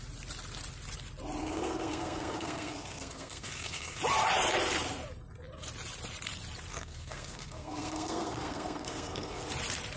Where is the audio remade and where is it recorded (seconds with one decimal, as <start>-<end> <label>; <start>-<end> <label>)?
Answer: 0.0-1.4 recorded; 1.4-4.0 remade; 4.0-6.7 recorded; 6.7-9.4 remade; 9.4-10.0 recorded